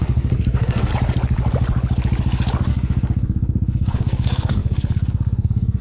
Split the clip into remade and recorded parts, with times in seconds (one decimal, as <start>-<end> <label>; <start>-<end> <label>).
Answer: 0.0-0.9 remade; 0.9-2.7 recorded; 2.7-5.8 remade